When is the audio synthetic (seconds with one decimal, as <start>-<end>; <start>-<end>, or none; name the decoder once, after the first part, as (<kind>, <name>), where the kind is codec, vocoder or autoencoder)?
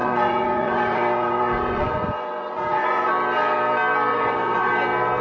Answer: 0.0-3.1 (vocoder, Vocos); 4.1-4.7